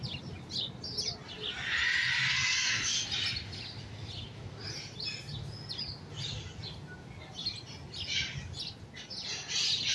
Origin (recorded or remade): recorded